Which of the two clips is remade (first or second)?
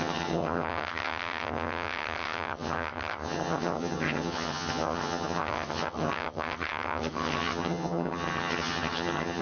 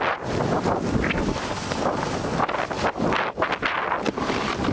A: first